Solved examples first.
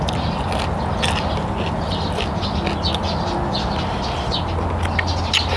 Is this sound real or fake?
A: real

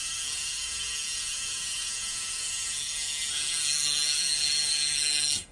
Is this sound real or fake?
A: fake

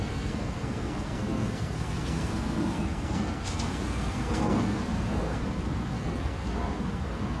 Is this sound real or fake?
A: fake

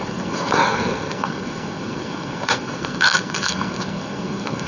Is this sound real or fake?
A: fake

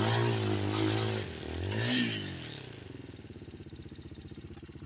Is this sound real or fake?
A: real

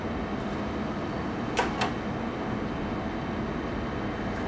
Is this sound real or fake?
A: real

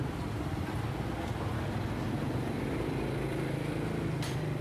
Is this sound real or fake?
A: real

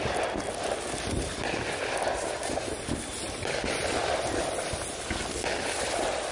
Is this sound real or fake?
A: real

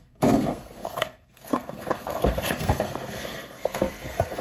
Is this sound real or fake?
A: fake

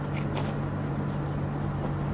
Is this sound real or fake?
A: real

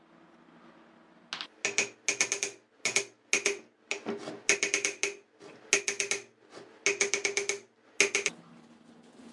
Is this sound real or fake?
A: real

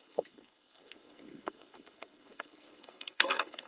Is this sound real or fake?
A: fake